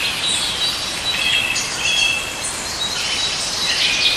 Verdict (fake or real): real